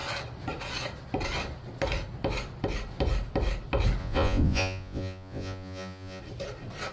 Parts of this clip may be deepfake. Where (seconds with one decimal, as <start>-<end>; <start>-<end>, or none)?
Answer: 4.0-6.2